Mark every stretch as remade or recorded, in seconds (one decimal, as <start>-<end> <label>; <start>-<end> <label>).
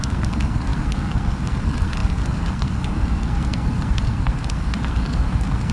0.0-5.7 remade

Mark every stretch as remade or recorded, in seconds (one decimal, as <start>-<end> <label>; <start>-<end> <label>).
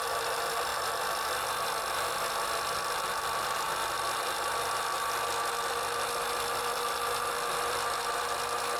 0.0-8.8 recorded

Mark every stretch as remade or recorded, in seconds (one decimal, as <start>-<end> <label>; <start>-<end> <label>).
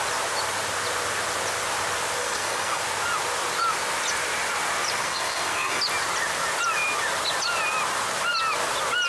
0.0-2.2 recorded; 2.2-2.8 remade; 2.8-5.0 recorded; 5.0-5.8 remade; 5.8-9.1 recorded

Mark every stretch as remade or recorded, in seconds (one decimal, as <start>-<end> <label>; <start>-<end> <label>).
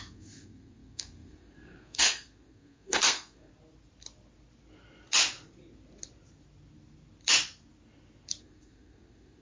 0.0-3.5 remade; 3.5-8.4 recorded; 8.4-9.4 remade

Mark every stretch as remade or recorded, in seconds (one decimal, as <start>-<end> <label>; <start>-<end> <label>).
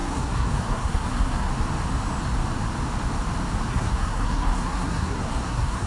0.0-1.5 remade; 1.5-3.7 recorded; 3.7-5.9 remade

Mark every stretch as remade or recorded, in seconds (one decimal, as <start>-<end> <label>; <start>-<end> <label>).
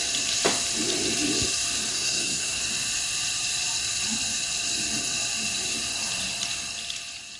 0.0-1.9 recorded; 1.9-2.6 remade; 2.6-7.4 recorded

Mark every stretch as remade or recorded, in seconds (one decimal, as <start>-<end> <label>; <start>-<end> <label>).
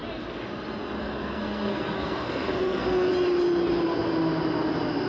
0.0-1.0 recorded; 1.0-3.1 remade; 3.1-5.1 recorded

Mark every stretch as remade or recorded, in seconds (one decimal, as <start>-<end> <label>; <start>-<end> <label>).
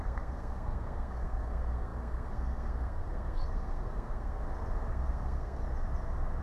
0.0-4.4 remade; 4.4-4.9 recorded; 4.9-5.6 remade; 5.6-6.4 recorded